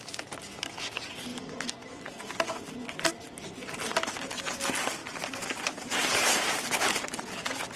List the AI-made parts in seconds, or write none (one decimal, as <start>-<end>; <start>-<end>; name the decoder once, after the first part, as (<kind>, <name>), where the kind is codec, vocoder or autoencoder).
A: none